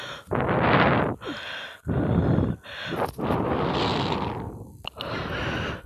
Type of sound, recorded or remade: recorded